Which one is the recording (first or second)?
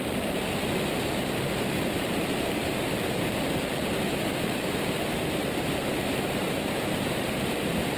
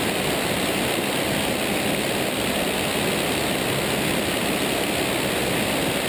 second